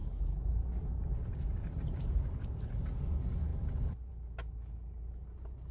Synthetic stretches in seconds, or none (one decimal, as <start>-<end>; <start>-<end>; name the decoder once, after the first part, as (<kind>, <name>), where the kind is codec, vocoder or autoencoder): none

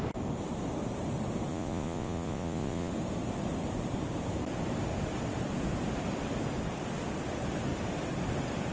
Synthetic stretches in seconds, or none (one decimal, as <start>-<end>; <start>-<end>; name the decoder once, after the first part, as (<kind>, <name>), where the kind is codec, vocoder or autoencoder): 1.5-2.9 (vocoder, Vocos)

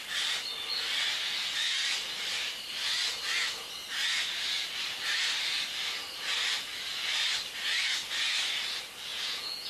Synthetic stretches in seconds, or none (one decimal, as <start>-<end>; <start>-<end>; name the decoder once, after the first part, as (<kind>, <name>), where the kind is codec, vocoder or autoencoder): 9.1-9.7 (vocoder, Vocos)

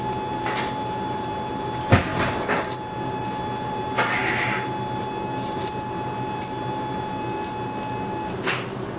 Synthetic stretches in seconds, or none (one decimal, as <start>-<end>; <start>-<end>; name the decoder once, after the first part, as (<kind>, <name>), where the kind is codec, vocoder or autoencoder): none

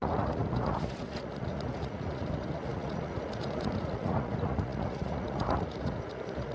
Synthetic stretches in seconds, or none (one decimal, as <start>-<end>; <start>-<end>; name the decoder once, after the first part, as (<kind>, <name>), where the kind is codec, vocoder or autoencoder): 0.0-6.5 (vocoder, Vocos)

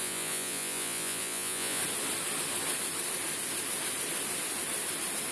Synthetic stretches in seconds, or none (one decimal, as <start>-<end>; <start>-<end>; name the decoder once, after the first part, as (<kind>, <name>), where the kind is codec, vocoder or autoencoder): 0.0-1.8 (vocoder, Vocos)

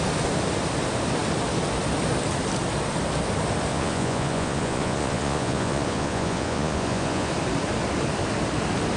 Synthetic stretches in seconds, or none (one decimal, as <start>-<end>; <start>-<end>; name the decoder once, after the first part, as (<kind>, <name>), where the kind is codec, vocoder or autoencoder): 3.7-7.3 (vocoder, Vocos)

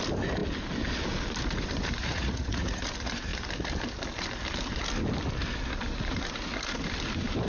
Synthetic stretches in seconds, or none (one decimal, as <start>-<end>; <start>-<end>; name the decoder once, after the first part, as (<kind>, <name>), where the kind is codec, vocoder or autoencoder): 2.0-2.8 (vocoder, Vocos)